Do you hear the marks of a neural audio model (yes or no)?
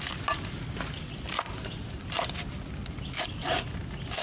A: no